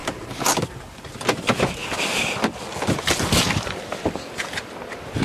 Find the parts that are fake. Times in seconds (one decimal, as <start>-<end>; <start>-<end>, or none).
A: 0.0-0.7; 1.8-5.2